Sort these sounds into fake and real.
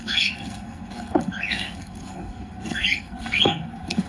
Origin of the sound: fake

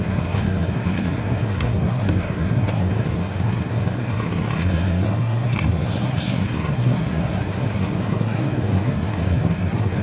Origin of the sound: fake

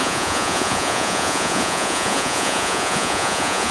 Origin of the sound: fake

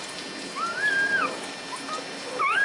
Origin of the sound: real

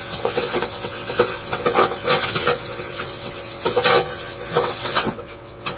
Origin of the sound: fake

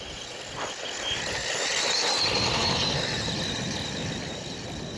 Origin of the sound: real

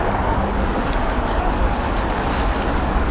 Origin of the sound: fake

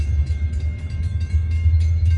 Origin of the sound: fake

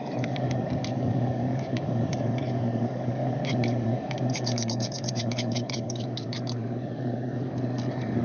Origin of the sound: fake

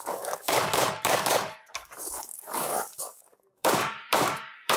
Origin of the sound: fake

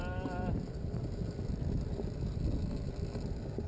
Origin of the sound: real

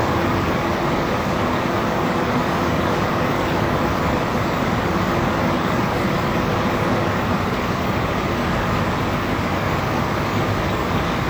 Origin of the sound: fake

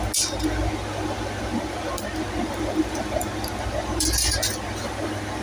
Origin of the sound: real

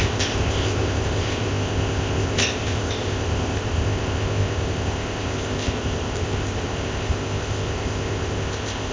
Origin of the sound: fake